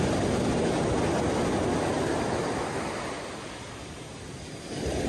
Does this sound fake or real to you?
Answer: real